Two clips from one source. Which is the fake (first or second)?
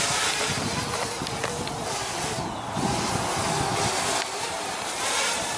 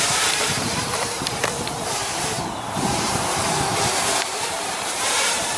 second